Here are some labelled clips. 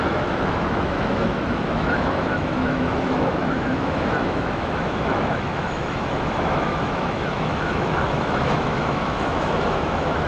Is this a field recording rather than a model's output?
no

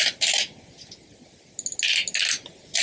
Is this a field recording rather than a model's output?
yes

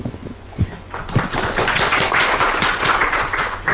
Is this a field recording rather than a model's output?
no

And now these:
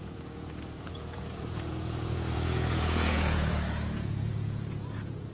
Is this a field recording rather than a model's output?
no